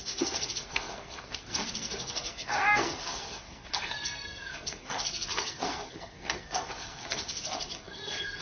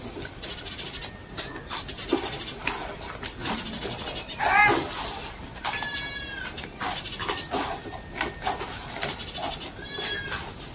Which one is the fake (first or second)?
first